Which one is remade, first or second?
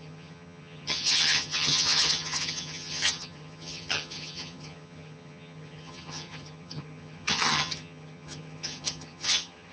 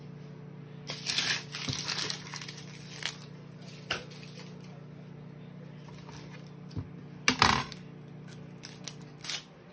first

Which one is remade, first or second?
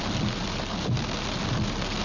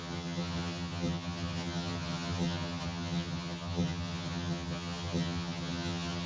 second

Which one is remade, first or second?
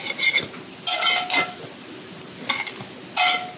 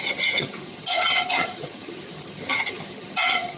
second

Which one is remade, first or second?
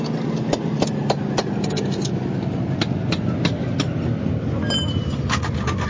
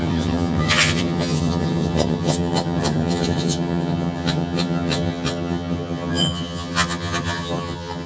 second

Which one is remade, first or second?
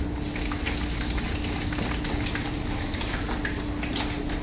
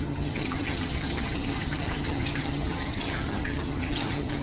second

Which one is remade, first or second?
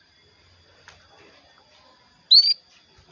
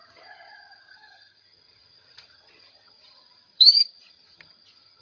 second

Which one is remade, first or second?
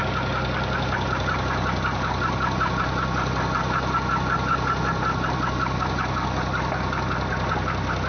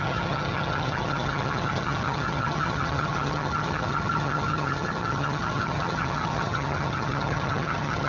second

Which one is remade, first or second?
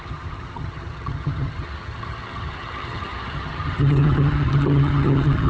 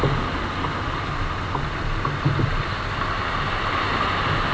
first